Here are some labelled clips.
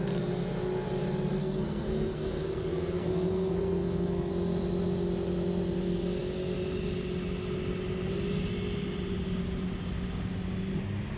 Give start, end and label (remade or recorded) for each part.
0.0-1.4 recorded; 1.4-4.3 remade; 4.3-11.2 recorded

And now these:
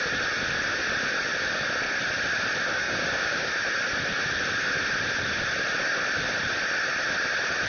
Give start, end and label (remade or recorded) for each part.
0.0-2.8 recorded; 2.8-3.5 remade; 3.5-7.7 recorded

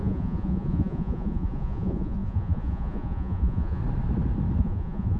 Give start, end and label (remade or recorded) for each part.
0.0-3.8 remade; 3.8-4.6 recorded; 4.6-5.2 remade

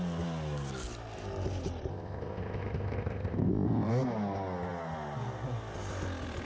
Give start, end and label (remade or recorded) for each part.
0.0-1.9 recorded; 1.9-3.9 remade; 3.9-6.5 recorded